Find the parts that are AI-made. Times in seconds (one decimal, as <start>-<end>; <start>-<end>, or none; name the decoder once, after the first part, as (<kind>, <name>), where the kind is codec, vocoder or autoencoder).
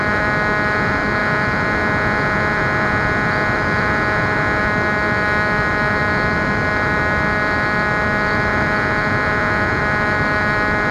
none